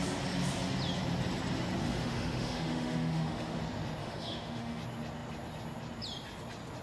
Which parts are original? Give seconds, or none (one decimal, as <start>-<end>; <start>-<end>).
0.0-1.8; 3.6-4.0; 4.8-6.8